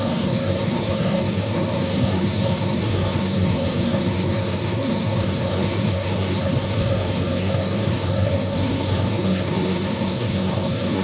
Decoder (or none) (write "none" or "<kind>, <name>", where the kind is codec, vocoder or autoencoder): codec, SNAC